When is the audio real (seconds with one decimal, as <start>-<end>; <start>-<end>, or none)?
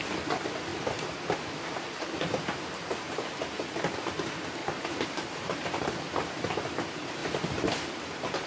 0.0-0.7; 3.8-4.6; 5.9-7.2; 7.8-8.5